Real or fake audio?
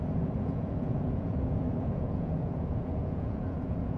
fake